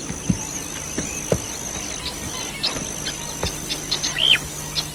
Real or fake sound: real